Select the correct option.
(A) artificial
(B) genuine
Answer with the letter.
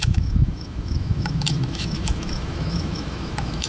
A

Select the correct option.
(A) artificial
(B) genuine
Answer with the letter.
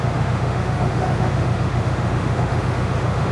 A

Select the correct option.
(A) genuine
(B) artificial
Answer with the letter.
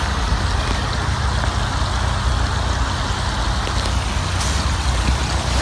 A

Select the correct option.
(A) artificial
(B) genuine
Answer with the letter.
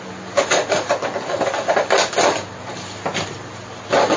B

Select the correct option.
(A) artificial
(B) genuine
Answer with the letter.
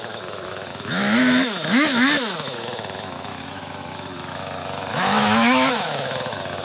A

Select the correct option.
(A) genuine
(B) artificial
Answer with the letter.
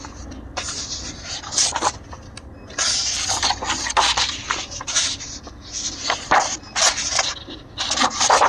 A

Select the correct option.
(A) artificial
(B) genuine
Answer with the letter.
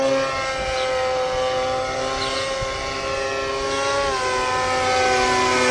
B